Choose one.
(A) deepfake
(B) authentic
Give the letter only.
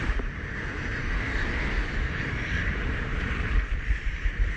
A